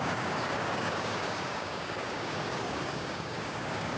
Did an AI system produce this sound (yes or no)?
yes